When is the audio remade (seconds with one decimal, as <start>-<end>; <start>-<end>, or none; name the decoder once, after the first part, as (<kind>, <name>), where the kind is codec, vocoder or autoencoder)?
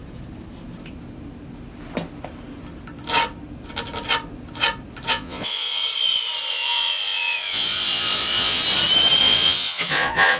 5.1-5.8 (vocoder, Vocos); 6.5-8.6; 9.2-10.4